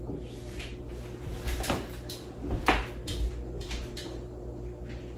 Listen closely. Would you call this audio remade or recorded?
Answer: recorded